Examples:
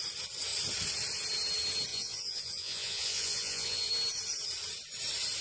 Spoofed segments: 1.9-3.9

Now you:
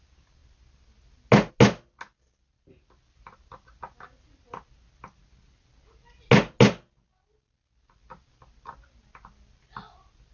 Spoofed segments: none

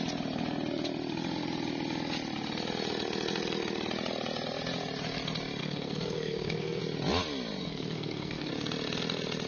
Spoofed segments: 5.6-6.8; 7.6-8.5

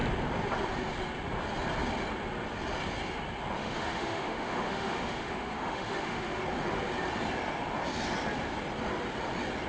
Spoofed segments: 3.6-6.4

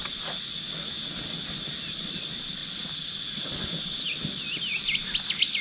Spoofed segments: none